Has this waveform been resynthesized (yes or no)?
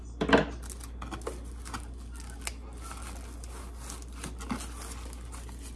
no